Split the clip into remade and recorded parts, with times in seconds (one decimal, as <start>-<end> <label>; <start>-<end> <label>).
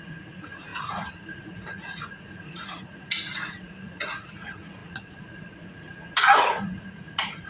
0.0-7.5 remade